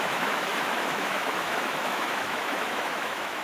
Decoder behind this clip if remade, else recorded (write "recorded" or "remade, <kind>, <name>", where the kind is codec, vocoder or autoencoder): remade, autoencoder, DAC-VAE